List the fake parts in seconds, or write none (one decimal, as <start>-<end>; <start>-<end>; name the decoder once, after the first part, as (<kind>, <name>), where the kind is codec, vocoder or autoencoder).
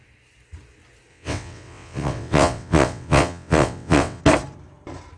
1.1-4.2 (vocoder, WaveNeXt)